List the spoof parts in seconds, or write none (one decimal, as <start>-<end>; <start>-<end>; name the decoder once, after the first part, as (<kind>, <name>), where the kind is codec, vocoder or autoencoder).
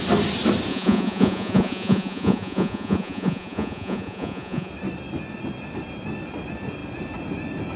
0.7-4.7 (vocoder, Vocos)